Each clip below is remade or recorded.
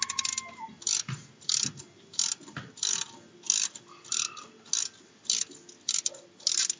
recorded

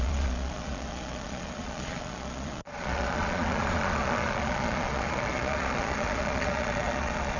remade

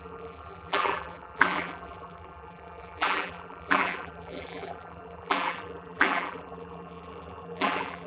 remade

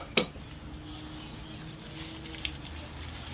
recorded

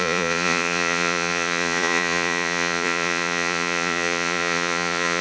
remade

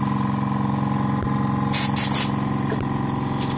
recorded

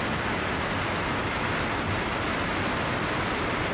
recorded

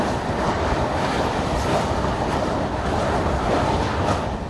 recorded